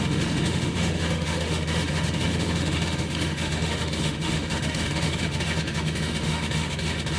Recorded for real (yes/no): no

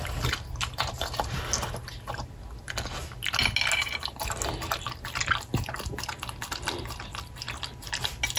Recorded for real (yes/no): yes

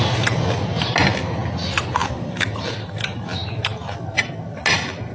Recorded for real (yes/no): yes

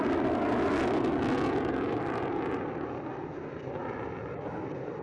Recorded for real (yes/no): yes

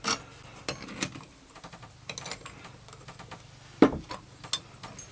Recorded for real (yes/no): yes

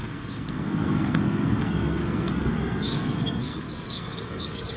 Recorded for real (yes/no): no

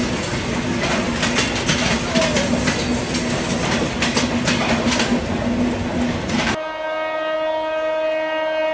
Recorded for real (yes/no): yes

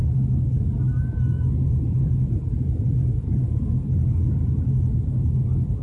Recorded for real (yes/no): yes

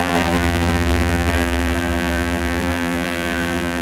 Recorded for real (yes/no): no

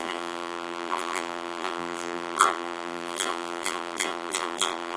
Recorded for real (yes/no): no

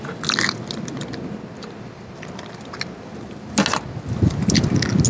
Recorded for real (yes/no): yes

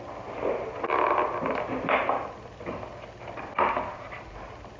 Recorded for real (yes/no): yes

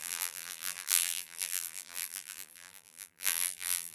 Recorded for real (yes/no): no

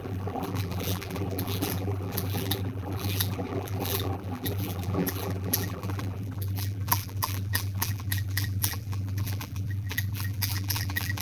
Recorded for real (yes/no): no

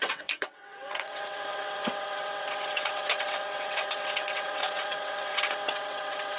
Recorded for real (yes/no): no